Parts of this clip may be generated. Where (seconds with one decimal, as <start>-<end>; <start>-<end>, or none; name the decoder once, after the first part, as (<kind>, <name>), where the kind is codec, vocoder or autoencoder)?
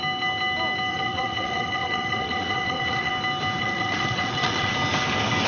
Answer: 0.9-3.1 (vocoder, WaveNeXt); 3.6-4.7